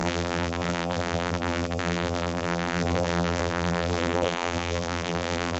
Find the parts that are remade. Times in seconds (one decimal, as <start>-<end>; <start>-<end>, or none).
0.0-5.6